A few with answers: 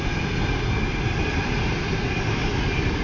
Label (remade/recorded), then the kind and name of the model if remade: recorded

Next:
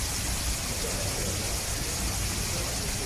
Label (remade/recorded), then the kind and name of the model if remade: recorded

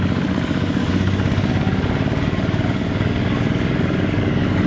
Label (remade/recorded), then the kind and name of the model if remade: remade, codec, DAC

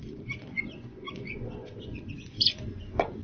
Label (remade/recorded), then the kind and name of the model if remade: remade, vocoder, Vocos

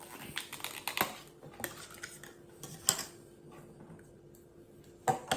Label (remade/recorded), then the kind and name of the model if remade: recorded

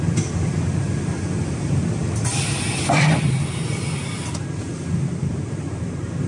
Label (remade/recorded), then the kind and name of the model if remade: recorded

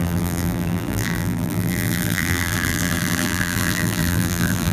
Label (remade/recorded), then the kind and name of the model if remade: remade, vocoder, BigVGAN v2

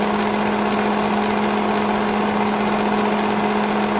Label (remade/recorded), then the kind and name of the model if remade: recorded